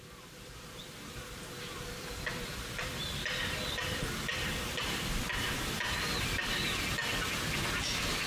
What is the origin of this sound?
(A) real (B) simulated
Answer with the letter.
A